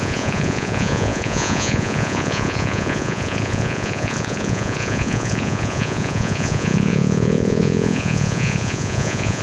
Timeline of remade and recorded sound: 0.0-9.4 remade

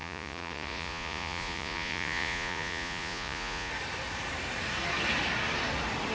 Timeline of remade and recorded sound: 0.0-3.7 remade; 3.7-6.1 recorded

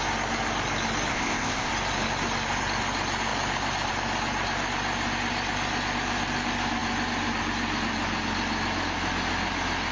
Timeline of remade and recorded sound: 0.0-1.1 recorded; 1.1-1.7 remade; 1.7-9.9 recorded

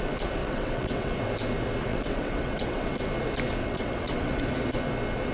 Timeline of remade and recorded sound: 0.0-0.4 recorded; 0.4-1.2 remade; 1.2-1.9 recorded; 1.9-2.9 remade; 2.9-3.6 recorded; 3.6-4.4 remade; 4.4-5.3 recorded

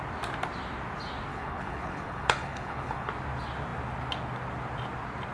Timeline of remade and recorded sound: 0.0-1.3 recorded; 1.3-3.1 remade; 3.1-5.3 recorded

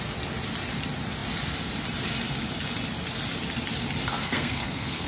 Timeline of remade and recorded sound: 0.0-4.1 recorded; 4.1-5.1 remade